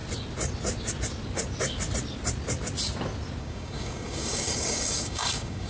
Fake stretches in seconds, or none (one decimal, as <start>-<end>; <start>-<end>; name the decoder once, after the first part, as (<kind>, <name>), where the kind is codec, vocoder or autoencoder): 3.4-5.7 (codec, DAC)

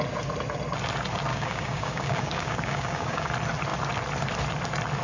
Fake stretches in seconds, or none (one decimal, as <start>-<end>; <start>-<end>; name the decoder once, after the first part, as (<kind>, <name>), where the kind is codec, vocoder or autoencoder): 1.3-3.3 (codec, DAC)

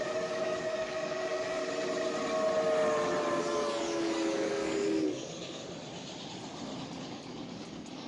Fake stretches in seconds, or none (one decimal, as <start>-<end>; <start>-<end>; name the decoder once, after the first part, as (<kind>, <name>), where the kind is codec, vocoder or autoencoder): 0.0-1.6 (codec, DAC); 3.4-5.6; 7.0-8.1

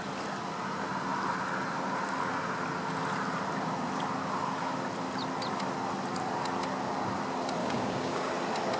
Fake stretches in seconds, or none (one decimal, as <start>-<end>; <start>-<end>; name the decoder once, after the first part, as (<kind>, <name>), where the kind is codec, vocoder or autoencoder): 7.6-8.3 (codec, DAC)